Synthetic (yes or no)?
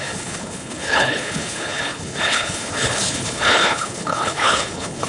yes